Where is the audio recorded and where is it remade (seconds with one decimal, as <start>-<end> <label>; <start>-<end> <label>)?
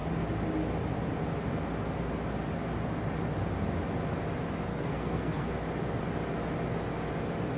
0.0-4.7 recorded; 4.7-5.5 remade; 5.5-7.6 recorded